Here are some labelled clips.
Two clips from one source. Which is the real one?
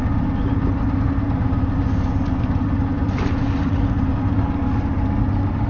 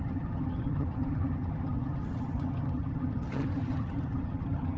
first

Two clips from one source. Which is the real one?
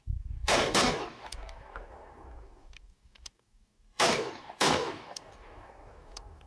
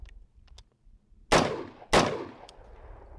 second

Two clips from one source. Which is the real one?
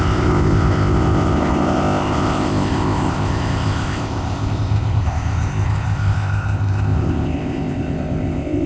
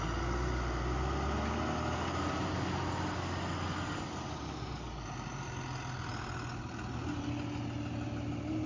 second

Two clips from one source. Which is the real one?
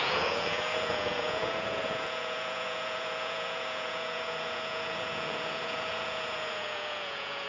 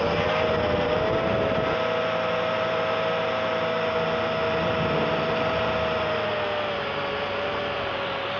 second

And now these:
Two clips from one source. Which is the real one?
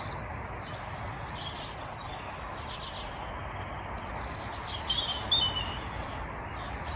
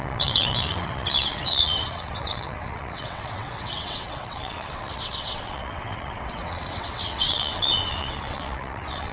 first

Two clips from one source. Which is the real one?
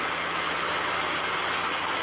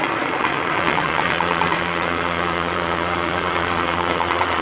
first